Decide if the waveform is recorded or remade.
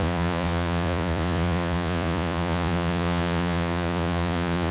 remade